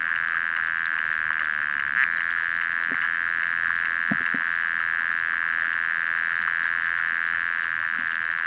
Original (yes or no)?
yes